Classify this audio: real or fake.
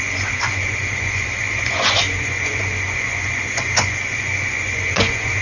fake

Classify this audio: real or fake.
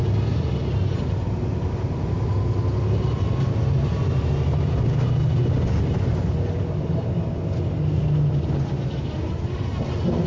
real